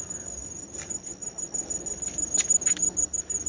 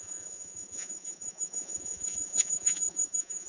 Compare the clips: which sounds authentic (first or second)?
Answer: first